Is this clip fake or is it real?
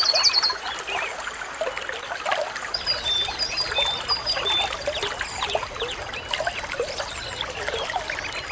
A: real